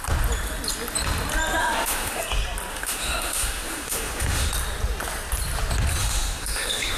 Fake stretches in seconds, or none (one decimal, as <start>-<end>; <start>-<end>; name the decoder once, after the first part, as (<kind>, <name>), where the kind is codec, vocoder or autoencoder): 1.6-2.2 (autoencoder, DAC-VAE); 2.7-4.5; 6.0-7.0